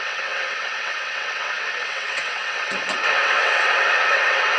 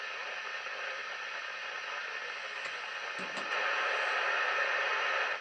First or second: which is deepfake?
first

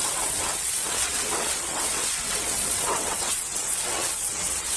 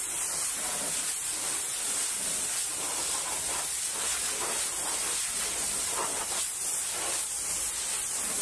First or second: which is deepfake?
first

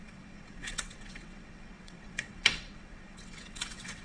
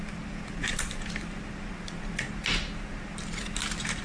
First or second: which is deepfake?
first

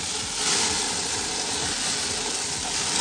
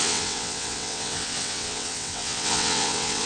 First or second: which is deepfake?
second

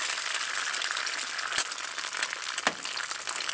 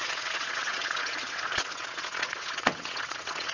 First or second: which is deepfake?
second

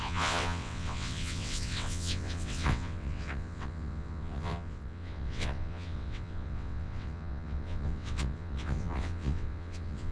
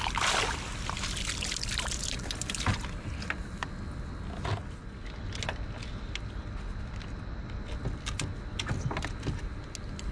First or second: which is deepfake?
first